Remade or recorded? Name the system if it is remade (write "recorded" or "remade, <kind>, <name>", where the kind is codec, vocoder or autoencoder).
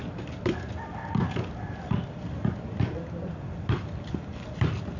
recorded